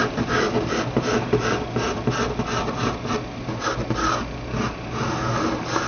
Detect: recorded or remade recorded